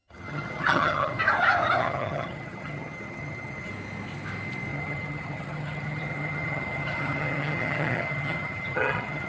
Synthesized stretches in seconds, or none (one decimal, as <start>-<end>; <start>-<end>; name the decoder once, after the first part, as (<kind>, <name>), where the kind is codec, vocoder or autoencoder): 0.0-1.1 (vocoder, HiFi-GAN); 1.8-3.7; 4.7-9.3